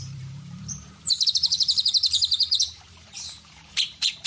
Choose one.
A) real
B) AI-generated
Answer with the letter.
B